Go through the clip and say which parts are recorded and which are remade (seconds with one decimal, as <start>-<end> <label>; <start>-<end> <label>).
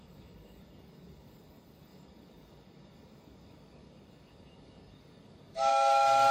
0.0-6.3 remade